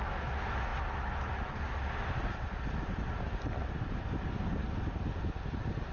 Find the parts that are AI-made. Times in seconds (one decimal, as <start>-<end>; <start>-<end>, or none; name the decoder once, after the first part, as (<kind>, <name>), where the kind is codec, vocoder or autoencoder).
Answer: none